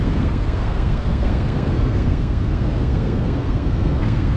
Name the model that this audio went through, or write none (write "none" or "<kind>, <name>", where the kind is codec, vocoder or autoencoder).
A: codec, SNAC